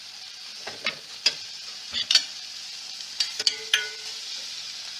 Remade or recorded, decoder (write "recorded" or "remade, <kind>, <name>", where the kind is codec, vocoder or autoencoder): remade, vocoder, BigVGAN v2